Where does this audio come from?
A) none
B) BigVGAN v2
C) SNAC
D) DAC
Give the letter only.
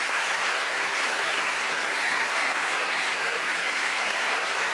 C